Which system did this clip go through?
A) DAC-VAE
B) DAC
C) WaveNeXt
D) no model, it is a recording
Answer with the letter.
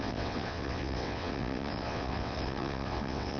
C